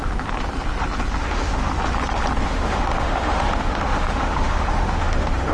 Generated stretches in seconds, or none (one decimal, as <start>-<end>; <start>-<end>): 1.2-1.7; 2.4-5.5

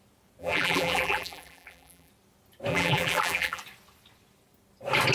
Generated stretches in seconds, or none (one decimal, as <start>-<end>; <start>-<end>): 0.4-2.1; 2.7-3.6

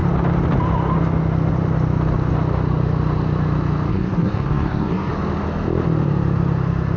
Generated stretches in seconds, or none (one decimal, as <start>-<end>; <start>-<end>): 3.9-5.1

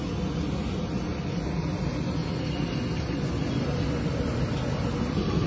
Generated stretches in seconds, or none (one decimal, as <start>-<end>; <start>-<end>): none

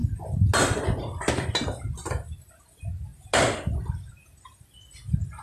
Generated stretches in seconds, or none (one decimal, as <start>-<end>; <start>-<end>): none

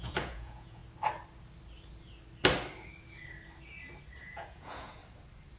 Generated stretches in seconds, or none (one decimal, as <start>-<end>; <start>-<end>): 0.0-0.8; 4.2-5.0

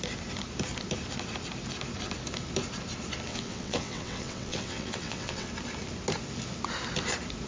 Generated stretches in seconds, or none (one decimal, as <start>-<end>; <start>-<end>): 3.3-5.5